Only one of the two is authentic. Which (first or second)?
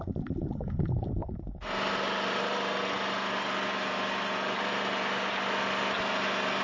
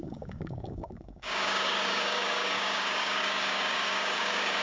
first